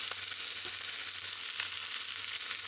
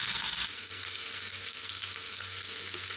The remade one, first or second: second